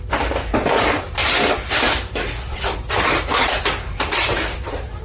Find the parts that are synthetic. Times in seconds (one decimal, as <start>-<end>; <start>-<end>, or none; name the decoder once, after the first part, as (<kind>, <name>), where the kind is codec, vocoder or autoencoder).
1.2-2.9 (vocoder, BigVGAN v2)